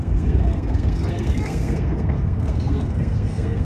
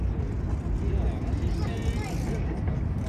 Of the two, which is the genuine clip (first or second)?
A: second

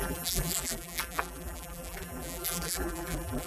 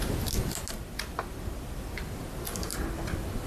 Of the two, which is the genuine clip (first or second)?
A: second